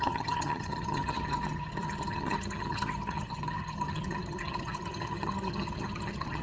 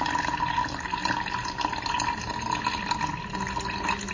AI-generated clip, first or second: first